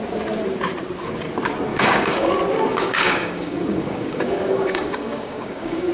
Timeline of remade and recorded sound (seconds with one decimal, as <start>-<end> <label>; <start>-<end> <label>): 0.0-1.7 recorded; 1.7-2.3 remade; 2.3-2.7 recorded; 2.7-5.9 remade